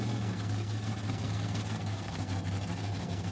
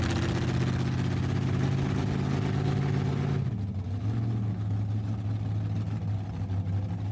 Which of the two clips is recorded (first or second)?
second